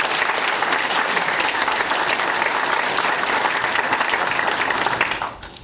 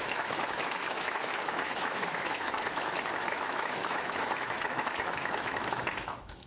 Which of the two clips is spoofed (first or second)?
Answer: second